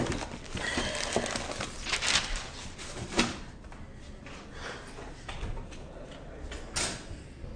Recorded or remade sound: recorded